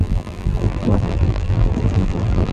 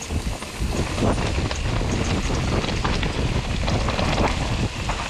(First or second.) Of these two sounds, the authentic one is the second